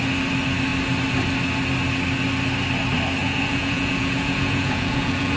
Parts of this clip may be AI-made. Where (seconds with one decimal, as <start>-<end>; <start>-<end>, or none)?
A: 3.2-5.4